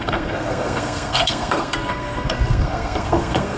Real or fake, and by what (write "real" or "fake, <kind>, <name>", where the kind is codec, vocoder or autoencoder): fake, codec, SNAC